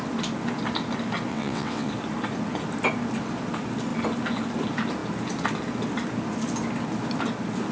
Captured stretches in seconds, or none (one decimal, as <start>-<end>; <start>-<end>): 0.0-1.3; 1.9-7.7